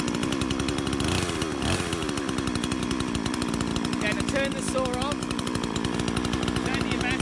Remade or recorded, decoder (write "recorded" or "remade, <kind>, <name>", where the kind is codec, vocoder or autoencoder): recorded